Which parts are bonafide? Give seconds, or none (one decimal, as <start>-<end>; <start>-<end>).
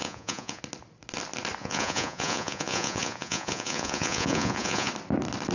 0.6-1.6; 4.9-5.5